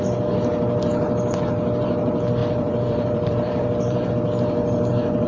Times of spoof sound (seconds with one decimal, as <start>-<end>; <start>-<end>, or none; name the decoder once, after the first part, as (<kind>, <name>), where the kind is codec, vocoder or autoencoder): 2.4-4.1 (vocoder, BigVGAN v2)